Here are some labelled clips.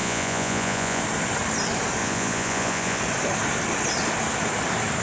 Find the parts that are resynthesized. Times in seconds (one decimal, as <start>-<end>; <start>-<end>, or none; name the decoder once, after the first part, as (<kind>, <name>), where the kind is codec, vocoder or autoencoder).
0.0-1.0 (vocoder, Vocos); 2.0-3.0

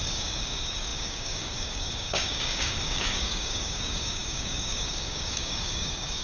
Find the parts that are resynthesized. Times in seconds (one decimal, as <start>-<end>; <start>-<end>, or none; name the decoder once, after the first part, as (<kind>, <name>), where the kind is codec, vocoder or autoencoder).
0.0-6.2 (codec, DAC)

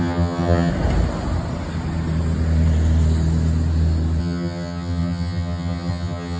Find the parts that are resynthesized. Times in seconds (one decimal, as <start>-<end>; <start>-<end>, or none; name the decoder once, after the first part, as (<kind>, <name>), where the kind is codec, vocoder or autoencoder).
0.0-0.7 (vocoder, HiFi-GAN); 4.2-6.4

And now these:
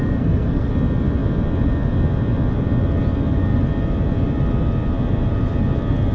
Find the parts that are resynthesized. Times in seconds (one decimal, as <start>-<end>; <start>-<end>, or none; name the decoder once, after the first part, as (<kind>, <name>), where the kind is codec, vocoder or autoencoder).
0.0-0.7 (codec, SNAC)

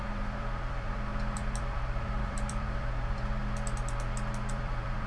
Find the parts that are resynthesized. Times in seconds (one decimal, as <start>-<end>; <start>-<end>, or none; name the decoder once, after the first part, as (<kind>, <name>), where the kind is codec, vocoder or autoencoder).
0.0-3.4 (vocoder, BigVGAN v2); 4.5-5.1

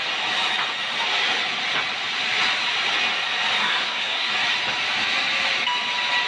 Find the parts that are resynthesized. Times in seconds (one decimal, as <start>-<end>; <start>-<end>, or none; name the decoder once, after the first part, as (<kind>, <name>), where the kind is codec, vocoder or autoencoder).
3.6-4.3 (codec, SNAC)